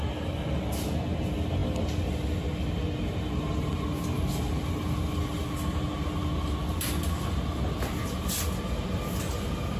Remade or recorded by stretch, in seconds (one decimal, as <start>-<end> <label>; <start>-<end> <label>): 0.0-9.8 recorded